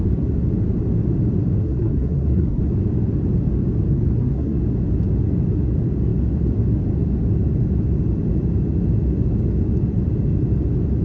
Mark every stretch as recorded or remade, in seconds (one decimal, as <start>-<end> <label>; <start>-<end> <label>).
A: 0.0-1.6 recorded; 1.6-2.6 remade; 2.6-3.9 recorded; 3.9-4.6 remade; 4.6-11.0 recorded